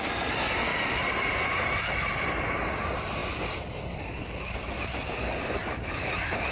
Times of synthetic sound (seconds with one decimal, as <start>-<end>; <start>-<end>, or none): 0.7-1.8; 5.6-6.5